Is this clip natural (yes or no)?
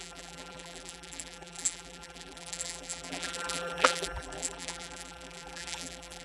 no